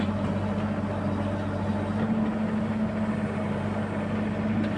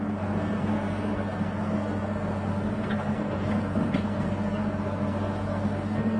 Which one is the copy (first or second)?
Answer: second